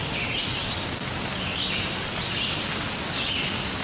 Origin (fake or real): real